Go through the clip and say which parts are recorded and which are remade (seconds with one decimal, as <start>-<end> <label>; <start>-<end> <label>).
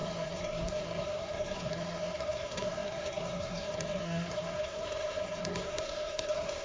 0.0-6.6 remade